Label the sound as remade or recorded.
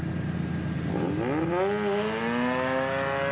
recorded